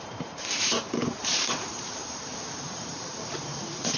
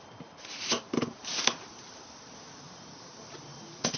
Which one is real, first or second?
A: second